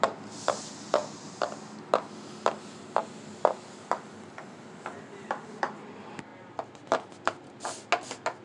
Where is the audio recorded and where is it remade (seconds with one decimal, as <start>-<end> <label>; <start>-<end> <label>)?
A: 0.0-8.4 recorded

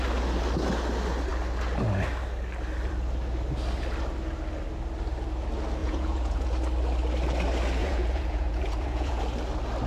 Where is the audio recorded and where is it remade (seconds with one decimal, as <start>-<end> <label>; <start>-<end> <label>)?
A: 0.0-5.8 recorded; 5.8-6.5 remade; 6.5-7.8 recorded; 7.8-9.2 remade; 9.2-9.9 recorded

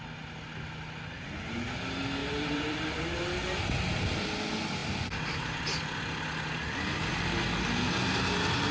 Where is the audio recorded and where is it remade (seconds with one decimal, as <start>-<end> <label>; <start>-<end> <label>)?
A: 0.0-2.2 recorded; 2.2-3.0 remade; 3.0-4.8 recorded; 4.8-5.6 remade; 5.6-8.7 recorded

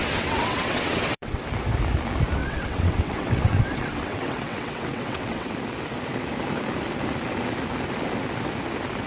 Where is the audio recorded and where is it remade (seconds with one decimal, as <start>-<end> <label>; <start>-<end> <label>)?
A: 0.0-1.4 remade; 1.4-2.4 recorded; 2.4-5.5 remade; 5.5-9.1 recorded